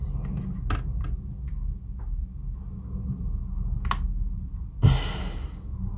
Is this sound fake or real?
real